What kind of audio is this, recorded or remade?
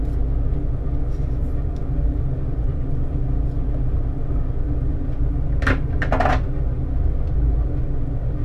recorded